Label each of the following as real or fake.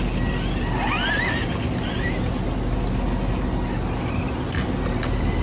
real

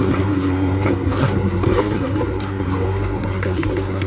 fake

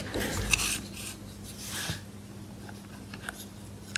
real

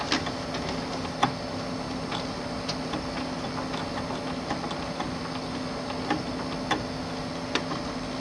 real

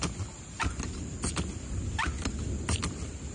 real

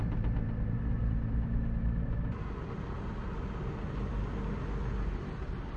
real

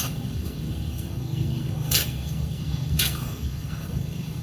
fake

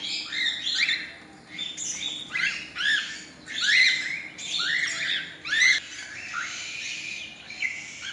real